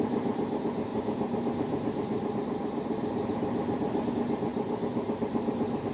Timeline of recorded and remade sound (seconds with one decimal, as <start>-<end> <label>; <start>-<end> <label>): 0.0-0.9 recorded; 0.9-4.1 remade; 4.1-4.5 recorded; 4.5-5.9 remade